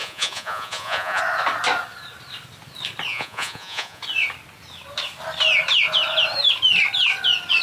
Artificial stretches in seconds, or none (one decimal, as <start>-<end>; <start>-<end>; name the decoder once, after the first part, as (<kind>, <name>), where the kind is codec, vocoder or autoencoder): 0.0-1.2 (vocoder, Vocos); 3.1-4.0